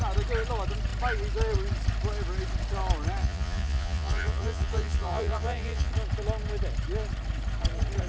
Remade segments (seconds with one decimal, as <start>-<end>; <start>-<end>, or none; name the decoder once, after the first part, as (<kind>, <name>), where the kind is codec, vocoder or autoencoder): 3.2-5.9 (vocoder, Vocos)